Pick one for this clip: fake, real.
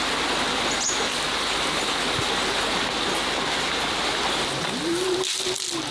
real